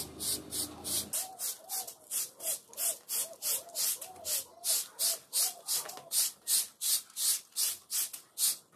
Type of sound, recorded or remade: recorded